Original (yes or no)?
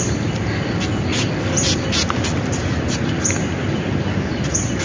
yes